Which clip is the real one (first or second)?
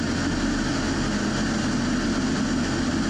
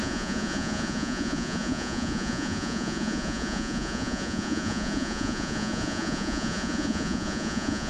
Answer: first